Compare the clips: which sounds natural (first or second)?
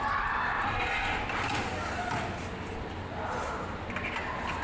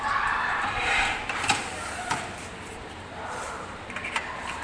first